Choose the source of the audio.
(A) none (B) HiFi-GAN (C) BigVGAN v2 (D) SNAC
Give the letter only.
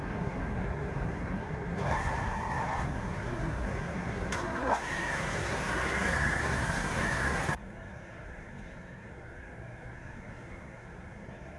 D